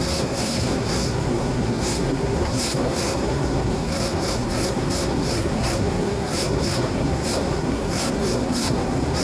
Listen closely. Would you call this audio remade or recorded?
remade